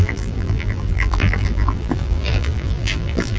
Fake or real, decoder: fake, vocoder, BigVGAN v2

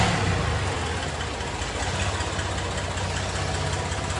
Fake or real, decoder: real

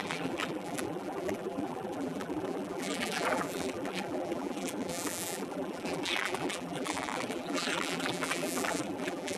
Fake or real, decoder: fake, vocoder, BigVGAN v2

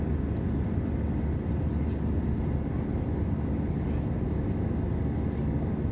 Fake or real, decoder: real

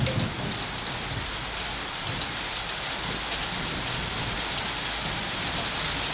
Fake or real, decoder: fake, vocoder, BigVGAN v2